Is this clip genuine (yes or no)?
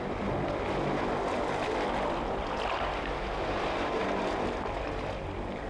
yes